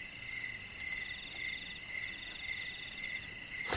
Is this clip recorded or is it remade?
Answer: recorded